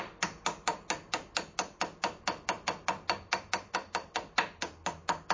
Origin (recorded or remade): recorded